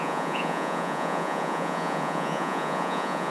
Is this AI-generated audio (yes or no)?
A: yes